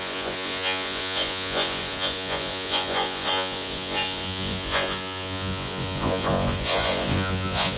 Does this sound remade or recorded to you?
remade